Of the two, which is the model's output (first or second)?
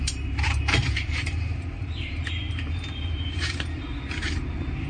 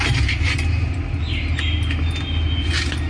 first